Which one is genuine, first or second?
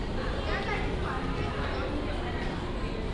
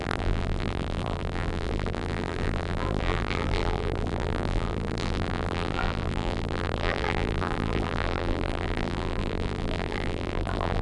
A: first